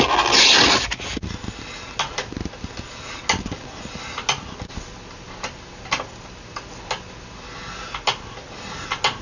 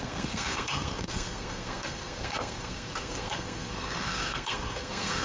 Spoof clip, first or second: second